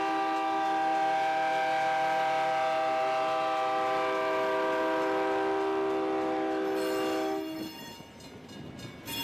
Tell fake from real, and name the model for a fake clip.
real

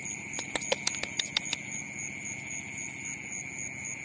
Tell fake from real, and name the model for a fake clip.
real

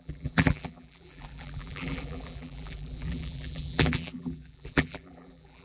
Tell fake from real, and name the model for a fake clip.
fake, vocoder, BigVGAN v2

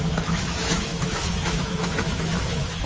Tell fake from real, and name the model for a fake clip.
fake, autoencoder, DAC-VAE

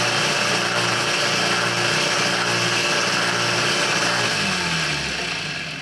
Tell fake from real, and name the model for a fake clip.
real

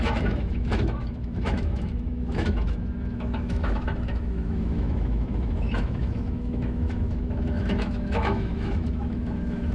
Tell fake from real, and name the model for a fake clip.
fake, autoencoder, DAC-VAE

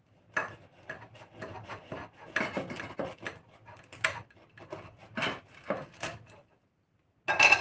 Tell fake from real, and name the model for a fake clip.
real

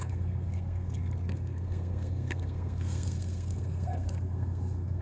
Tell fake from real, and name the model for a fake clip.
fake, codec, SNAC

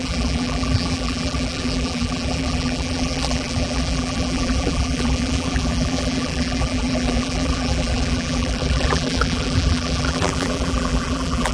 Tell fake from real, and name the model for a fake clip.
fake, vocoder, BigVGAN v2